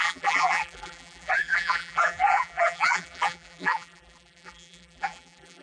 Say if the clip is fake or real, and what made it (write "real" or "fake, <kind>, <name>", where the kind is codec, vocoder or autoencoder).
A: fake, vocoder, BigVGAN v2